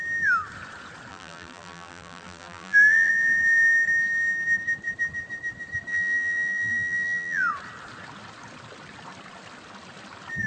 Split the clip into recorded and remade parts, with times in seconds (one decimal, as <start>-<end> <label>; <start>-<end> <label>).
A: 0.0-1.1 recorded; 1.1-3.1 remade; 3.1-5.9 recorded; 5.9-7.5 remade; 7.5-10.5 recorded